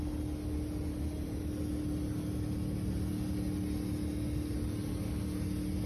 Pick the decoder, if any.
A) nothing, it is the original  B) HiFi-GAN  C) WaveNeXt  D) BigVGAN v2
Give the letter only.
A